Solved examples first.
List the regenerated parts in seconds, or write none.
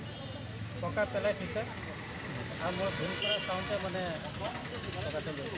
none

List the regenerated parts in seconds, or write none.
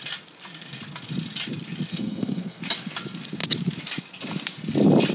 1.9-2.6 (codec, SNAC)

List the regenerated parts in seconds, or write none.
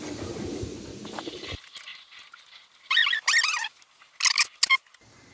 none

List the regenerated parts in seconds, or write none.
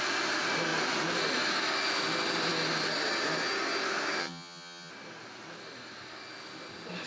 4.2-4.9 (vocoder, HiFi-GAN)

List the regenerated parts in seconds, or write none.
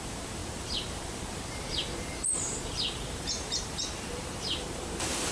0.0-5.3 (vocoder, BigVGAN v2)